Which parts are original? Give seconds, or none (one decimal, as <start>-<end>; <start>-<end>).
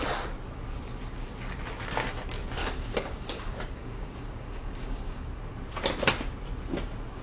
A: 0.0-2.6; 5.3-7.2